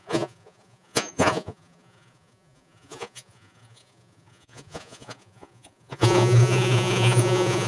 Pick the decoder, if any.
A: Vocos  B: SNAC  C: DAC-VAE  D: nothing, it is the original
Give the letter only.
A